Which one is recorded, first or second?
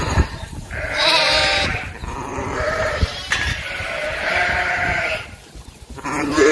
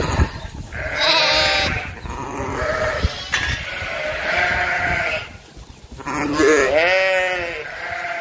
second